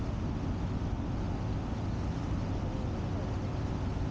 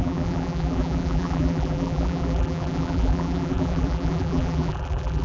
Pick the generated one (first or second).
second